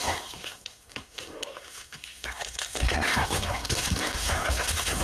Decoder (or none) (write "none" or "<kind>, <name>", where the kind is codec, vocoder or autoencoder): codec, SNAC